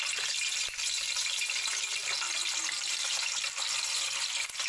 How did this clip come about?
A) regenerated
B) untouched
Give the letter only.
B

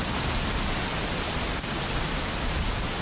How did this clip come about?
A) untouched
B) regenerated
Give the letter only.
A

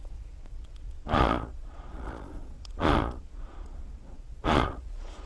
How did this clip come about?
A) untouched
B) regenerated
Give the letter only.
B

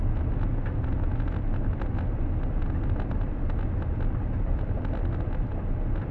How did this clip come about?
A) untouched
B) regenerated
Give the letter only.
A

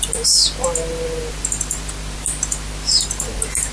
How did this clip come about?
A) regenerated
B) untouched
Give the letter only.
B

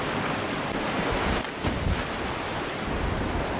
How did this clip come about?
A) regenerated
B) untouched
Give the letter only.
A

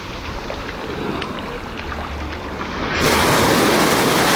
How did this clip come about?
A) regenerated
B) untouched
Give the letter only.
B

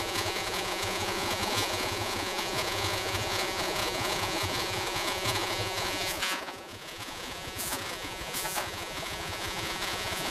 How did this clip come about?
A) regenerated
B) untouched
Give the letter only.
A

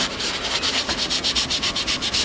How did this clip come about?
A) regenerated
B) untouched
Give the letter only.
B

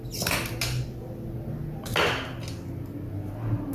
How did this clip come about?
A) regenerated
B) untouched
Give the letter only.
B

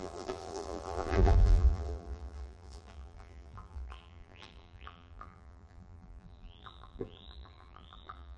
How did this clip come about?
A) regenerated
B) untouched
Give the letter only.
A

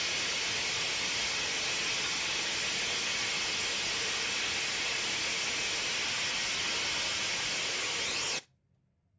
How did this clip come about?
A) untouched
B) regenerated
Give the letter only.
A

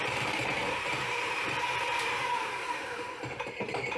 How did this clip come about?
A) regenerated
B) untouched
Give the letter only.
A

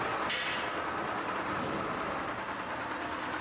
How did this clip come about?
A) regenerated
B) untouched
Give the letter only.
B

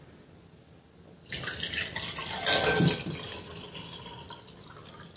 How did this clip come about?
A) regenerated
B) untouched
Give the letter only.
B